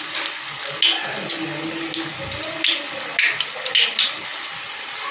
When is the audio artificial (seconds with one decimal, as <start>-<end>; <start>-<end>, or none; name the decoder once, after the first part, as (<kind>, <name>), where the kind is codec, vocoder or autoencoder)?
4.3-5.1 (vocoder, BigVGAN v2)